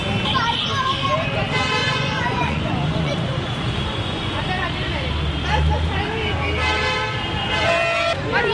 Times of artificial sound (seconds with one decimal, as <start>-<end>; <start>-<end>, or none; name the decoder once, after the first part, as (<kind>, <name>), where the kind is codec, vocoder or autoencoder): 1.8-4.4 (vocoder, Vocos)